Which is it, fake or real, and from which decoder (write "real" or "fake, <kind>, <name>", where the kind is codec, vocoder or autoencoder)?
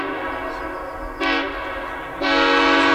real